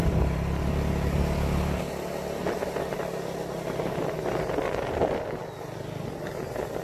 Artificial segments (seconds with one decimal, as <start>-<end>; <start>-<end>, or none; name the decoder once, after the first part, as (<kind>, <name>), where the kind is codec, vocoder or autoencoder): 0.0-0.6 (vocoder, BigVGAN v2)